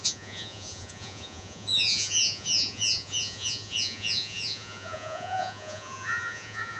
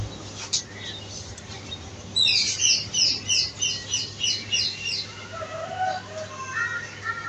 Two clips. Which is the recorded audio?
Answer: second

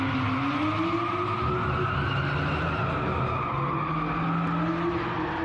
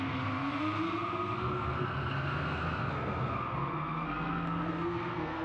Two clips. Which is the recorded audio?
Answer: first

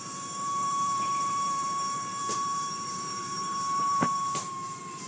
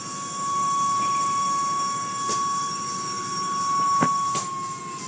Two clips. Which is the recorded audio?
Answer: second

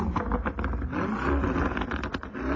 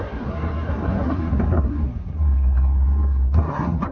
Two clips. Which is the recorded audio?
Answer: first